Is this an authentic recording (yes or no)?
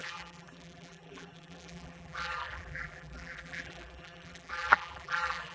no